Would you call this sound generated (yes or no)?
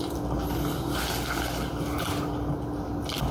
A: no